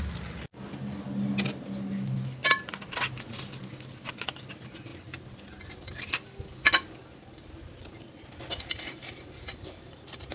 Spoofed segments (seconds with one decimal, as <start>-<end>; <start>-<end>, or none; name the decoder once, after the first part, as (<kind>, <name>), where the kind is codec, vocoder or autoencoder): none